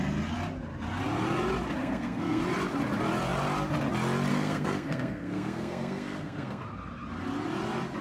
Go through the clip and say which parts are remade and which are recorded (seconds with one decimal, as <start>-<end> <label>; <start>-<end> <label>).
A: 0.0-1.8 recorded; 1.8-2.4 remade; 2.4-4.3 recorded; 4.3-6.6 remade; 6.6-8.0 recorded